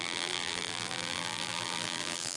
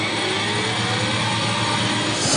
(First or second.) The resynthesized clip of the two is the first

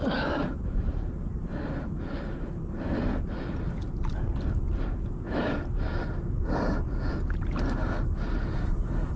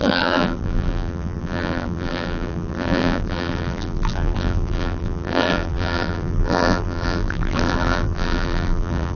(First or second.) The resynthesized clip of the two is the second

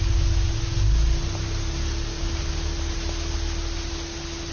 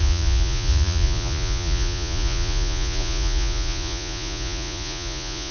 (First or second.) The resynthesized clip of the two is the second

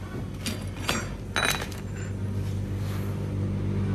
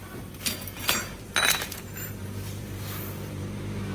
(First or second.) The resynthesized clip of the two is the second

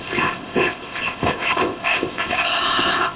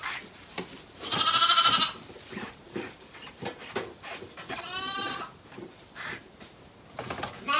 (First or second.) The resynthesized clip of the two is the first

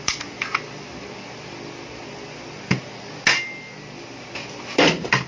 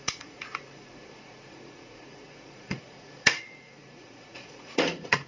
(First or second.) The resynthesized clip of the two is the second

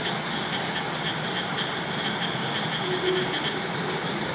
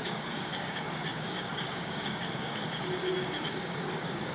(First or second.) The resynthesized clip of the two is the second